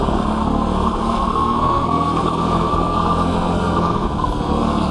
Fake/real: fake